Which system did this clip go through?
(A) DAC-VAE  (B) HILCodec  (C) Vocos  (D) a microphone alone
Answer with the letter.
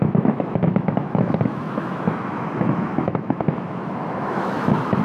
A